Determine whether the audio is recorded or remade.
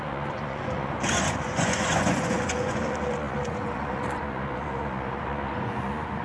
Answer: remade